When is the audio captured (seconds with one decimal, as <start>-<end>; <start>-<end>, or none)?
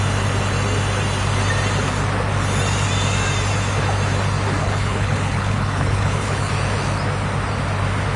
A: 0.0-4.6; 6.5-8.2